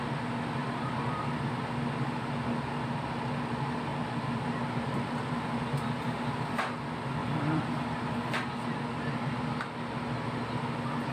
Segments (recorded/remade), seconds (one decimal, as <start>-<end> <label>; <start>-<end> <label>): 0.0-0.6 recorded; 0.6-1.5 remade; 1.5-3.9 recorded; 3.9-5.4 remade; 5.4-7.2 recorded; 7.2-8.0 remade; 8.0-11.1 recorded